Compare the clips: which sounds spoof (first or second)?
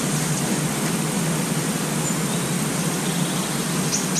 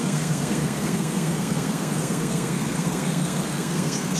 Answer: second